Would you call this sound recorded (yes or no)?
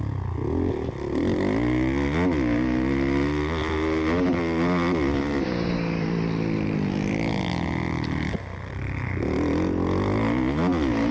yes